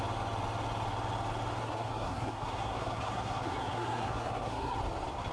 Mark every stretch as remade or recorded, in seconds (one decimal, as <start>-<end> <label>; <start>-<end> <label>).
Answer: 0.0-1.6 recorded; 1.6-4.8 remade; 4.8-5.3 recorded